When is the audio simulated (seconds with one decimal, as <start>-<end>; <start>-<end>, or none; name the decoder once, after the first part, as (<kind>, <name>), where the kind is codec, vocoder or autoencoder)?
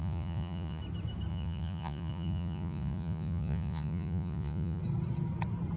0.0-0.8 (vocoder, Vocos); 1.3-4.8